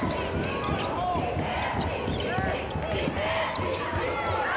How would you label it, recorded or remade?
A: recorded